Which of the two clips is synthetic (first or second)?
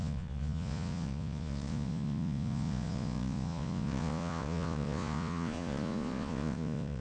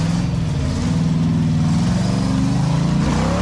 first